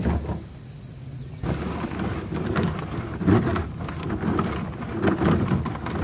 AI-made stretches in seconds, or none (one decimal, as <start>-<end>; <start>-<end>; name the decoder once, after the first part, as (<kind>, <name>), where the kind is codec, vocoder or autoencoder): none